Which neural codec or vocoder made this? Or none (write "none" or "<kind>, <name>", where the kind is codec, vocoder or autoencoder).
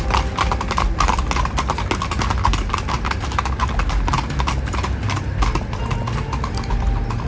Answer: none